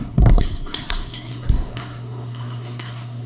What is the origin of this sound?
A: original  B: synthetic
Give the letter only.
B